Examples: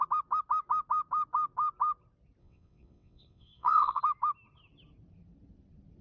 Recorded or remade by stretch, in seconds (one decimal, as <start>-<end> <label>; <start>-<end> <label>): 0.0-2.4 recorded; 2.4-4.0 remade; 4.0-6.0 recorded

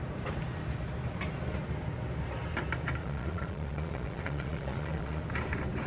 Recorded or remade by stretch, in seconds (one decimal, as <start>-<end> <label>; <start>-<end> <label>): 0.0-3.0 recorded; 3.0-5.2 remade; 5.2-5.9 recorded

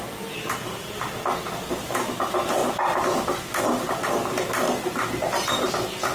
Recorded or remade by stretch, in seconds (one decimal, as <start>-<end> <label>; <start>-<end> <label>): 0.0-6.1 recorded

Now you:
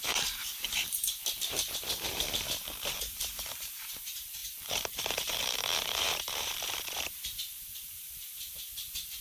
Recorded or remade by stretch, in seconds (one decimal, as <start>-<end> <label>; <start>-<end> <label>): 0.0-9.2 remade